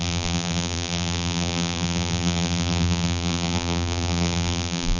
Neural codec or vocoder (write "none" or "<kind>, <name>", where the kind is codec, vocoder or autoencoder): vocoder, BigVGAN v2